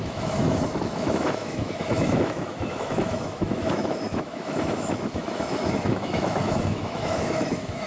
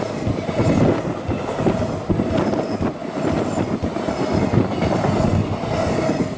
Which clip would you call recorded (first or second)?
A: second